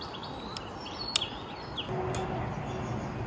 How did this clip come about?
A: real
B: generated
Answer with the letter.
A